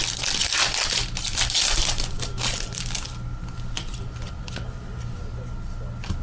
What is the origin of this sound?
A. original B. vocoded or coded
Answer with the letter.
A